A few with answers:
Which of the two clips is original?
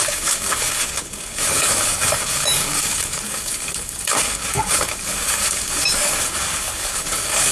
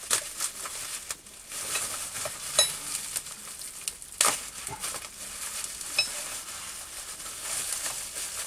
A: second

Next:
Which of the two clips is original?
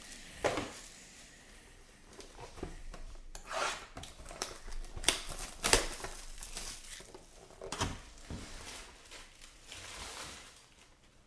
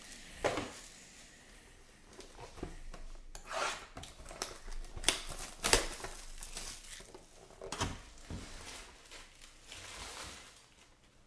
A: second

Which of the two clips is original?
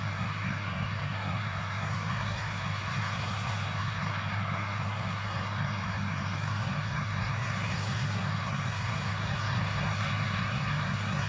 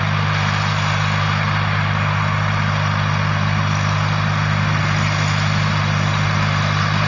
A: second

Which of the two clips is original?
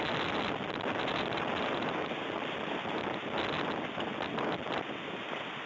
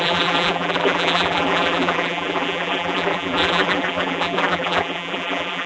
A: first